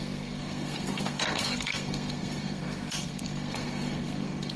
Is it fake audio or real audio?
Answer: fake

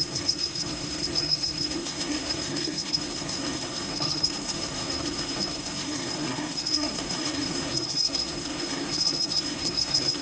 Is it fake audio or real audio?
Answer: fake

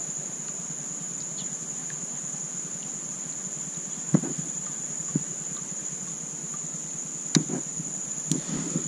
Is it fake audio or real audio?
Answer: real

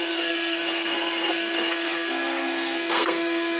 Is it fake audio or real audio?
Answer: fake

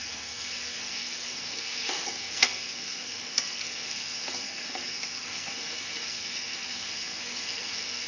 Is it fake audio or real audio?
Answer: fake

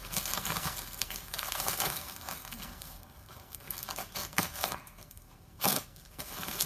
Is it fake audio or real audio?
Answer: fake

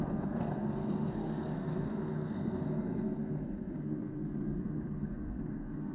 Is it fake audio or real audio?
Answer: fake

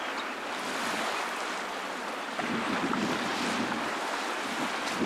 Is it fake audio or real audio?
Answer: real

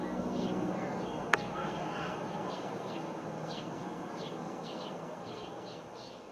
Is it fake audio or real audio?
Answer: fake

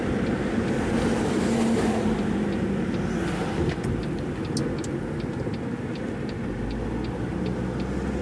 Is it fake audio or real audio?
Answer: real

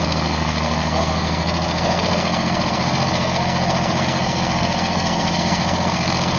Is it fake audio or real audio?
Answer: fake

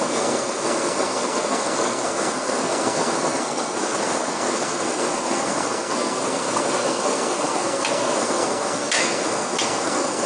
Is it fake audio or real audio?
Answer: fake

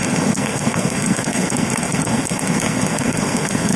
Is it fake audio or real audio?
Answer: fake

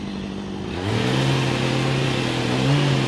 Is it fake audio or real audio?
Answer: real